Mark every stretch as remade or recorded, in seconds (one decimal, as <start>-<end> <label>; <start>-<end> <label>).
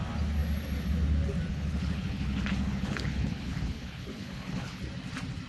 0.0-1.5 recorded; 1.5-4.8 remade; 4.8-5.5 recorded